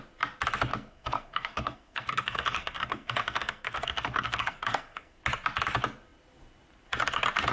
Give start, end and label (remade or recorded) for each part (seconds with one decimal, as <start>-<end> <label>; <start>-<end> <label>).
0.0-0.7 recorded; 0.7-5.2 remade; 5.2-7.5 recorded